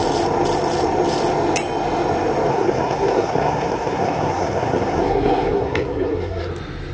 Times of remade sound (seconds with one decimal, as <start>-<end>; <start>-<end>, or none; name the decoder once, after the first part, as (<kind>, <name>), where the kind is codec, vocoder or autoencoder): 2.5-6.5 (codec, SNAC)